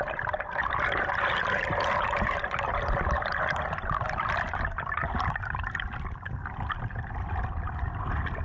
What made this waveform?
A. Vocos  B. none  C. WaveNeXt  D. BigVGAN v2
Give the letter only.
B